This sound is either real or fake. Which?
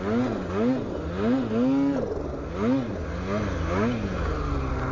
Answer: real